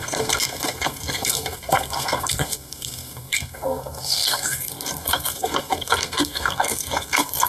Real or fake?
fake